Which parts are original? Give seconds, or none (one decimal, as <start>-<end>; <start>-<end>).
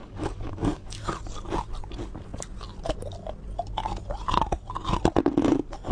1.1-5.9